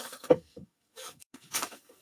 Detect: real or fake fake